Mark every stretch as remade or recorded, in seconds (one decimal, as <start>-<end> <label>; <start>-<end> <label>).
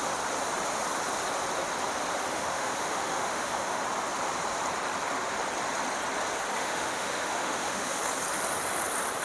0.0-2.3 recorded; 2.3-3.8 remade; 3.8-6.6 recorded; 6.6-8.0 remade; 8.0-9.2 recorded